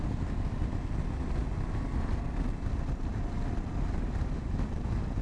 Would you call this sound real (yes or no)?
yes